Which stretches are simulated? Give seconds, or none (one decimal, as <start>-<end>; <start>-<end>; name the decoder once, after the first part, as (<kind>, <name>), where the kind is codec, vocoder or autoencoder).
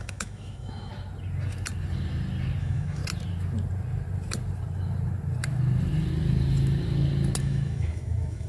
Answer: 0.0-0.9 (autoencoder, DAC-VAE); 2.6-3.0; 7.4-8.5